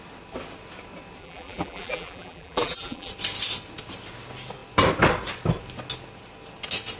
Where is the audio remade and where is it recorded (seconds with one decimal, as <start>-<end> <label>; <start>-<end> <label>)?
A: 0.0-1.2 recorded; 1.2-3.1 remade; 3.1-7.0 recorded